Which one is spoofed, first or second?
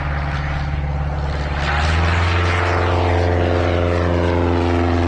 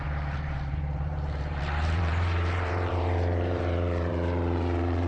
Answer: second